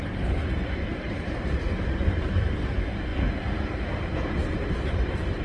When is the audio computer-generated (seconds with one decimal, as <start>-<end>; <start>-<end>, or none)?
0.0-3.1; 3.9-5.4